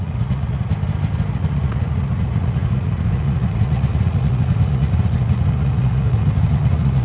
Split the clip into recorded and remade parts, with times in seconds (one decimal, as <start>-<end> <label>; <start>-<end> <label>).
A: 0.0-0.7 remade; 0.7-1.3 recorded; 1.3-7.0 remade